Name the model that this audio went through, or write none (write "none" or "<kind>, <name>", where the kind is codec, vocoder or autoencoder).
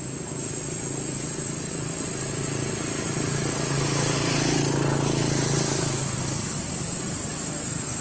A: none